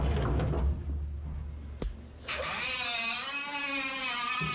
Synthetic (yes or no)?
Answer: no